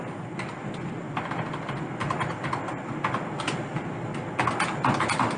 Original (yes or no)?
yes